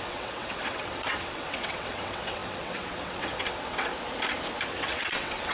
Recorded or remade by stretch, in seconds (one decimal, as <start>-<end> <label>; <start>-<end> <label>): 0.0-3.9 remade; 3.9-4.7 recorded; 4.7-5.5 remade

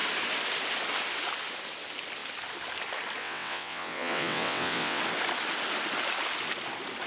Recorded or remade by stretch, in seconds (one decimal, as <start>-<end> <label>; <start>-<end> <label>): 0.0-3.2 recorded; 3.2-5.0 remade; 5.0-7.1 recorded

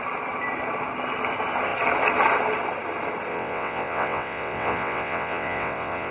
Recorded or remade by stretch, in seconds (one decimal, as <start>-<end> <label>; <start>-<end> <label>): 0.0-3.3 recorded; 3.3-6.1 remade

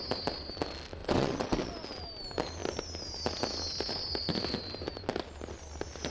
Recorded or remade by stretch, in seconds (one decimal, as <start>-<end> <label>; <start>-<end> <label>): 0.0-1.0 recorded; 1.0-1.7 remade; 1.7-6.1 recorded

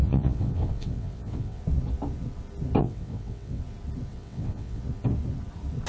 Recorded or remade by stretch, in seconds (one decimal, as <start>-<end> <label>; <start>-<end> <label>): 0.0-1.6 remade; 1.6-2.8 recorded; 2.8-3.6 remade; 3.6-4.1 recorded; 4.1-4.8 remade; 4.8-5.9 recorded

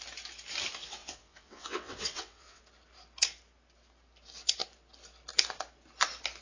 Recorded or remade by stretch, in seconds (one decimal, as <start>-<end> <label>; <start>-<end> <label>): 0.0-0.8 recorded; 0.8-2.6 remade; 2.6-6.4 recorded